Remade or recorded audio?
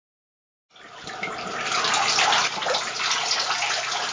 recorded